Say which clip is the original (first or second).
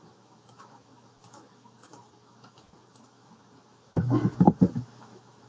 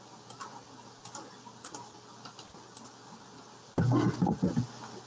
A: second